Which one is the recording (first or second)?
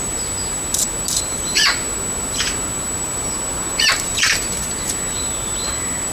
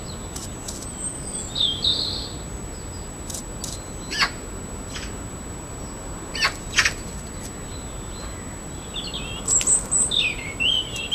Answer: second